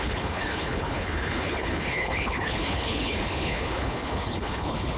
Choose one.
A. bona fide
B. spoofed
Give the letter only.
B